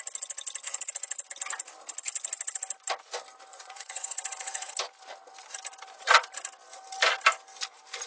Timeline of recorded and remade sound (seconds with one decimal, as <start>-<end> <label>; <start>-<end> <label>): 0.0-3.5 recorded; 3.5-4.7 remade; 4.7-8.1 recorded